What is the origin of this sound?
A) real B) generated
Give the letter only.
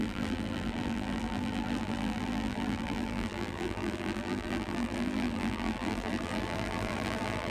B